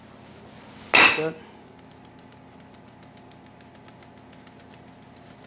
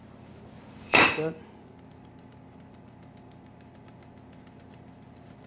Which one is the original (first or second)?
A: first